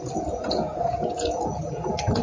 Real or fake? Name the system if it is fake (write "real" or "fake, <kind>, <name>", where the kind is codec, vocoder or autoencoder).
fake, vocoder, Vocos